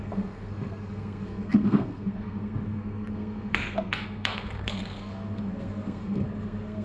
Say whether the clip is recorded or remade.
remade